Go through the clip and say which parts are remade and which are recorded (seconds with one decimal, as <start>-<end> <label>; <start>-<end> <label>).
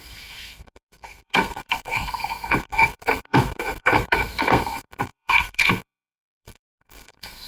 0.0-7.5 remade